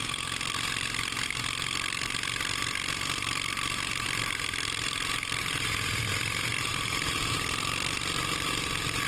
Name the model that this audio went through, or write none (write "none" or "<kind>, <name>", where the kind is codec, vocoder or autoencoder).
none